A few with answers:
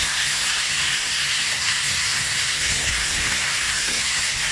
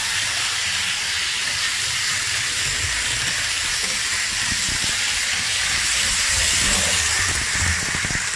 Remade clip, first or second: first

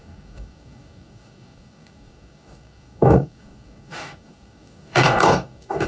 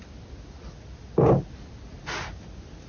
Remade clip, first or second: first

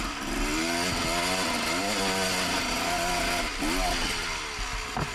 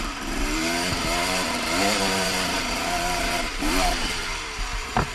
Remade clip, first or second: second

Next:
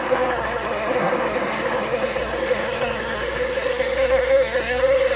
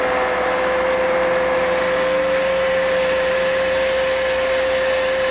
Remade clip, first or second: first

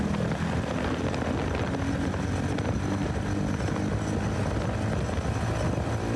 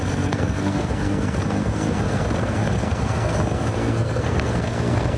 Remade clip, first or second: second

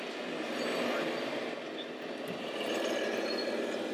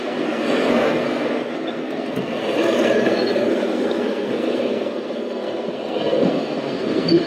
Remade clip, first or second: second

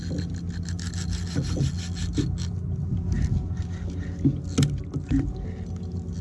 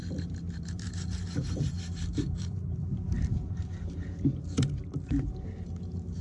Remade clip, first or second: second